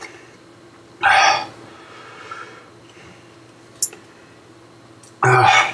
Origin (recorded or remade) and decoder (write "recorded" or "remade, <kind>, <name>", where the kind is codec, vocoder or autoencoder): recorded